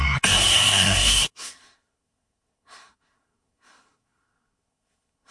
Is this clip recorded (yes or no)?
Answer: no